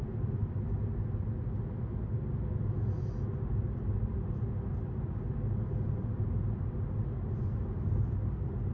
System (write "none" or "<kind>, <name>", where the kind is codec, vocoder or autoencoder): none